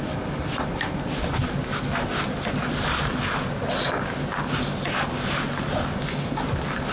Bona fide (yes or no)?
yes